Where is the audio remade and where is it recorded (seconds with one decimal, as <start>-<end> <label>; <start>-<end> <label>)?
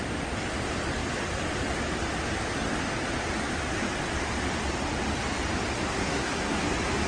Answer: 0.0-6.0 recorded; 6.0-6.6 remade; 6.6-7.1 recorded